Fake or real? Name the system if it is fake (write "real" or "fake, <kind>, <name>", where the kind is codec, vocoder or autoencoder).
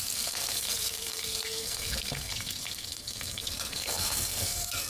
fake, codec, SNAC